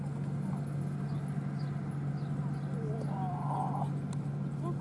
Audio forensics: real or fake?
real